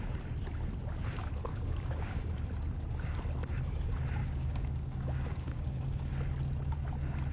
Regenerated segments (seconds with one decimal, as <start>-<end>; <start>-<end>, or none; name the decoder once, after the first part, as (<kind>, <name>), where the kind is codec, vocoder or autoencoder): 1.5-2.2 (codec, DAC); 4.2-6.1

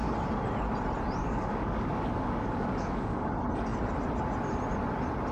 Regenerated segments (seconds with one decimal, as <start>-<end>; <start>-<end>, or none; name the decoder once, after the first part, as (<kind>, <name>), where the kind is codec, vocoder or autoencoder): 1.2-3.3 (codec, DAC)

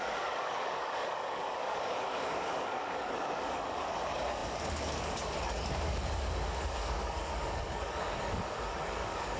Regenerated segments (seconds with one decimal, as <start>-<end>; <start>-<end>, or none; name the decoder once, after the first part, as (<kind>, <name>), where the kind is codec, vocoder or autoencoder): 0.0-9.4 (codec, DAC)

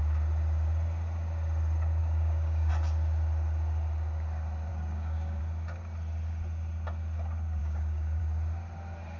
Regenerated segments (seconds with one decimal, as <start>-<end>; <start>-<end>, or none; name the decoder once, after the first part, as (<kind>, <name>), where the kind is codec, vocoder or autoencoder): 2.0-2.7 (codec, DAC); 4.7-5.4; 7.6-8.2

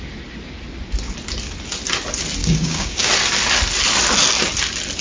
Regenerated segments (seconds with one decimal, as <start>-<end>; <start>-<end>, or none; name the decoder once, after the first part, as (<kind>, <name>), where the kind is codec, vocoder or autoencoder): 2.4-3.1 (codec, DAC)